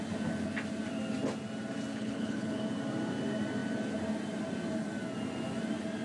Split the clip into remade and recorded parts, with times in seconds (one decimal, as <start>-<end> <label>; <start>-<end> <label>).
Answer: 0.0-1.9 recorded; 1.9-2.6 remade; 2.6-6.0 recorded